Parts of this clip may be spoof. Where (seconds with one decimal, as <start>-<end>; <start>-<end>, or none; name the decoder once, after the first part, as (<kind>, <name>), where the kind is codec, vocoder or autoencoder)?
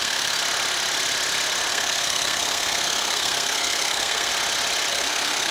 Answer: 0.0-0.4 (codec, SNAC); 1.7-4.3; 4.9-5.5